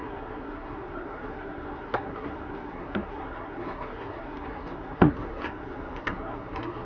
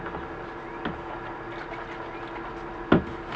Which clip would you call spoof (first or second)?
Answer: first